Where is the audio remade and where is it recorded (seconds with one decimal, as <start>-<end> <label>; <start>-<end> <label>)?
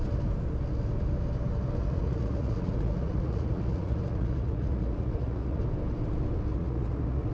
0.0-1.8 recorded; 1.8-5.6 remade; 5.6-6.5 recorded; 6.5-7.3 remade